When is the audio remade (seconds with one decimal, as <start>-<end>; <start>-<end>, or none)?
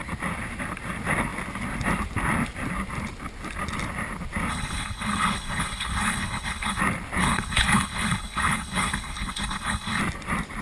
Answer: 4.5-6.8; 7.2-10.0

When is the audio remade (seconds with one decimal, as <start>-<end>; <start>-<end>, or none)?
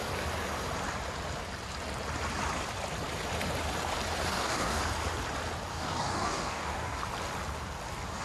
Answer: 4.3-4.8; 5.7-7.0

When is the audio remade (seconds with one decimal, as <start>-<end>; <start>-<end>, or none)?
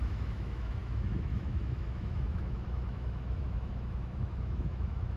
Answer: 0.0-5.2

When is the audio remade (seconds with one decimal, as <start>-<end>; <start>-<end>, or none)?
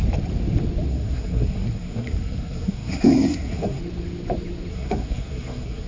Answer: 0.9-3.8; 4.7-5.9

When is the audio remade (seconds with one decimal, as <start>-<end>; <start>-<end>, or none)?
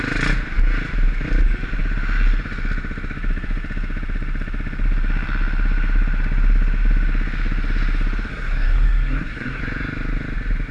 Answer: 8.3-9.6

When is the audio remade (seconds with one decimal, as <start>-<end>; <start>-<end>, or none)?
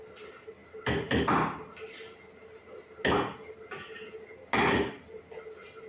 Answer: none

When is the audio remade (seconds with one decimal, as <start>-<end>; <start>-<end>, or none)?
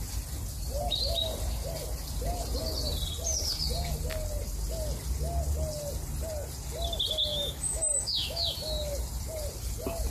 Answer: 7.3-8.5